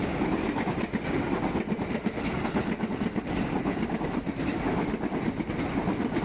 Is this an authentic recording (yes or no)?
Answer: yes